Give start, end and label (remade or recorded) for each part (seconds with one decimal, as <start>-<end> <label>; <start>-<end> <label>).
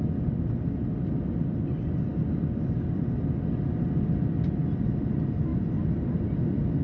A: 0.0-6.8 recorded